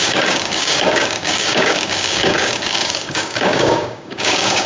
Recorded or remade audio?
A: remade